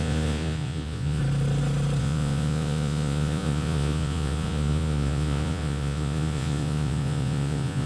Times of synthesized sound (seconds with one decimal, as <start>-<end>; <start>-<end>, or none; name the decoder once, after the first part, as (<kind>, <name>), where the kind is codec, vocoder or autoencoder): 0.0-1.2 (vocoder, Vocos); 2.0-7.9